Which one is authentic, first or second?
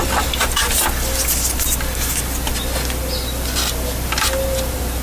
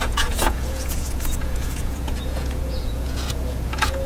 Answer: first